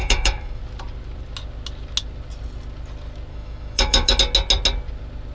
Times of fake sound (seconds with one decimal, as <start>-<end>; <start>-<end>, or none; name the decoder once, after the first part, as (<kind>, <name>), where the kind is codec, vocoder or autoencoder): 0.0-0.6 (autoencoder, DAC-VAE); 3.3-4.2